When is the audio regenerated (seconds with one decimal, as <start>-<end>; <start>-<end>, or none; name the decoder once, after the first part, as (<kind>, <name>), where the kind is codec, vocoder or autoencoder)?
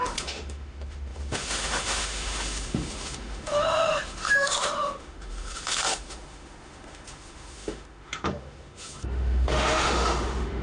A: 0.0-10.6 (autoencoder, DAC-VAE)